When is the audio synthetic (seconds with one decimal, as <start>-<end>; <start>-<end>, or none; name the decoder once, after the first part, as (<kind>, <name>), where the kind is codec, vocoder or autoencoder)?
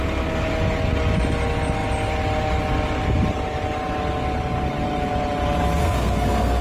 5.8-6.6 (codec, SNAC)